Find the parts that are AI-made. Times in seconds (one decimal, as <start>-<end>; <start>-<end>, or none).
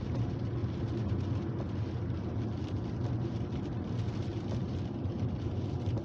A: 0.6-1.4; 4.3-5.0